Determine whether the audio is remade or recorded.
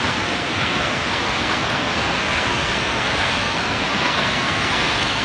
remade